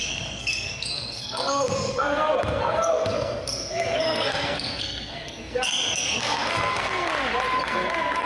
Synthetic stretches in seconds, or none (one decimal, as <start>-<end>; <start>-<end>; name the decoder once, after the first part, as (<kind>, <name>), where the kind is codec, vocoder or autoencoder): 0.0-7.1 (codec, SNAC); 7.6-8.3